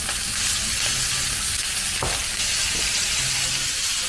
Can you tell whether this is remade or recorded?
recorded